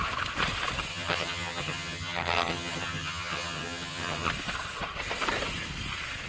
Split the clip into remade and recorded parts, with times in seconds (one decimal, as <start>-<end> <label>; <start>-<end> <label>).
0.0-0.9 recorded; 0.9-4.3 remade; 4.3-6.3 recorded